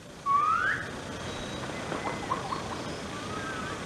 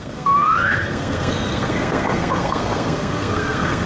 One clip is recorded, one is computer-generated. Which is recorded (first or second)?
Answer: first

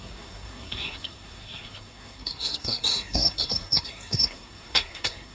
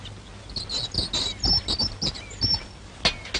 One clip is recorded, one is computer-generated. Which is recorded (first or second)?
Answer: second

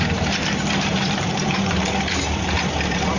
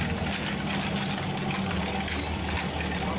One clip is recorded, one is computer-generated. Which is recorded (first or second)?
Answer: second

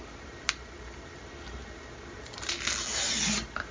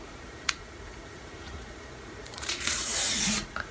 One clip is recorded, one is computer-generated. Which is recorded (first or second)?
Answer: first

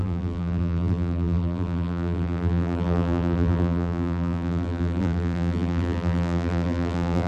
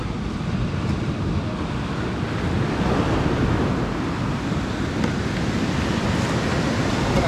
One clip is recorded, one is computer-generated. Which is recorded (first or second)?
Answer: second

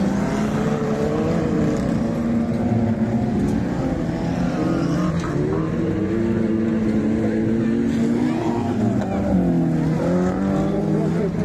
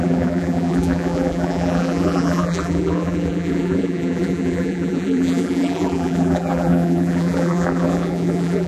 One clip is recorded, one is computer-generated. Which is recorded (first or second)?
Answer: first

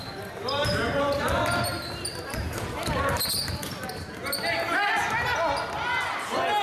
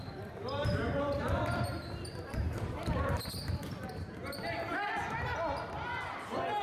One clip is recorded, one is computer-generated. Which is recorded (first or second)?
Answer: first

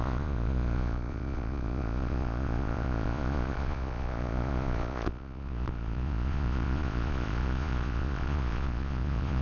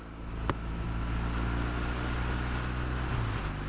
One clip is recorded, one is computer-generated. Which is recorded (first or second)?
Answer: second